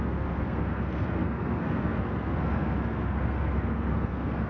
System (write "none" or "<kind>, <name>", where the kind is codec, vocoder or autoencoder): codec, SNAC